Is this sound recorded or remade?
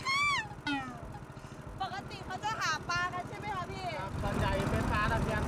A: recorded